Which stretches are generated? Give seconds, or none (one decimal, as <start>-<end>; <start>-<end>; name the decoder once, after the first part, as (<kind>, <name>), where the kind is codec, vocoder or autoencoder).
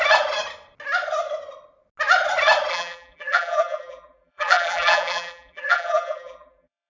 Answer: 2.7-6.9 (vocoder, BigVGAN v2)